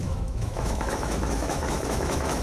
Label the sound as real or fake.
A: fake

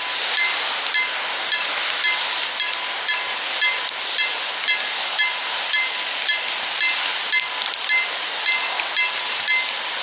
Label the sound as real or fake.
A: real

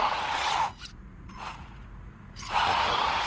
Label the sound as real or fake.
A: fake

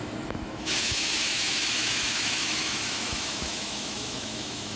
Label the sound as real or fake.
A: fake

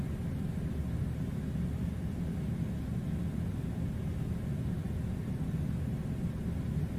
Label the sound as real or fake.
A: real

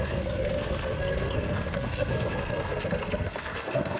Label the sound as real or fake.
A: fake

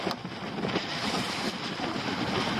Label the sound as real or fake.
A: real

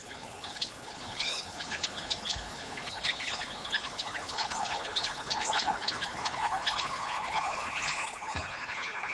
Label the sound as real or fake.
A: fake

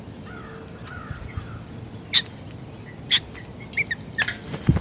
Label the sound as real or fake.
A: real